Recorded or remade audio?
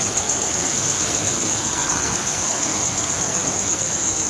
remade